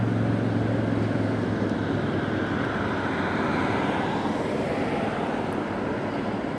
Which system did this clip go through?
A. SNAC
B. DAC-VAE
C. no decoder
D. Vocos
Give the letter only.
C